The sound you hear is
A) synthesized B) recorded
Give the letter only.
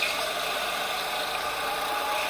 B